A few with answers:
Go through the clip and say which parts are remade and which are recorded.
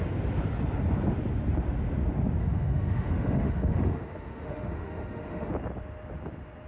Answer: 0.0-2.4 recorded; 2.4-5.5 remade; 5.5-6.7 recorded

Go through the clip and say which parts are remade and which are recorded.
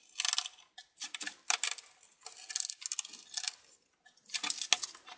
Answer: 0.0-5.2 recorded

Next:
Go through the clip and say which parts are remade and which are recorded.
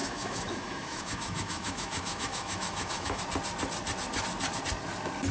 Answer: 0.0-3.2 remade; 3.2-5.3 recorded